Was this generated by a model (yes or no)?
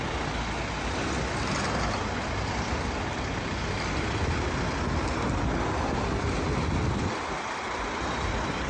no